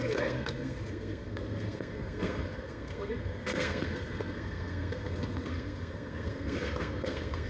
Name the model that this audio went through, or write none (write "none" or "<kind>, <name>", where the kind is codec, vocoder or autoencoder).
codec, SNAC